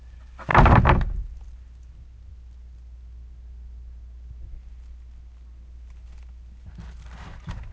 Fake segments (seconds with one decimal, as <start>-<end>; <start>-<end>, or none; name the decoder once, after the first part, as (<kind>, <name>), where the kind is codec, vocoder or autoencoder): none